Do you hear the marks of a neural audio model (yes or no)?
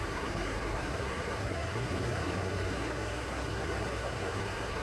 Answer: yes